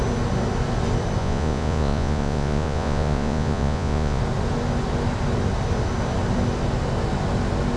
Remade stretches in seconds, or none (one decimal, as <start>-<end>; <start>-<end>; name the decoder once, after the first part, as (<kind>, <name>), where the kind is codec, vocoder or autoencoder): 1.2-4.2 (vocoder, Vocos)